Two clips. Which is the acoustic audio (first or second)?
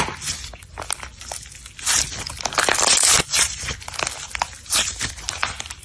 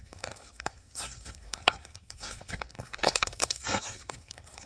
first